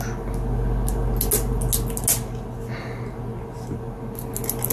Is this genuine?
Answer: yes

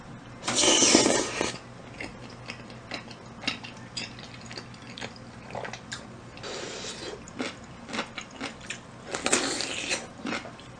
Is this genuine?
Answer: yes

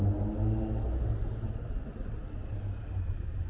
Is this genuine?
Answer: yes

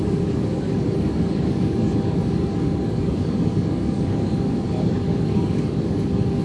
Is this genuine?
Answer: no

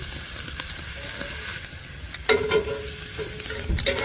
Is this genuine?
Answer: yes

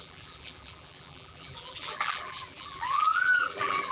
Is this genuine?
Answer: no